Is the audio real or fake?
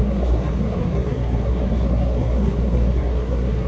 fake